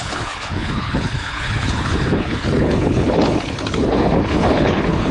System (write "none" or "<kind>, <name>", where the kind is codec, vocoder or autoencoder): codec, HILCodec